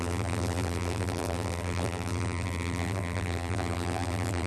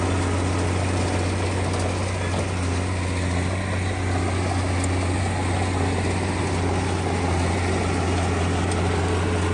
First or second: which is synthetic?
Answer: first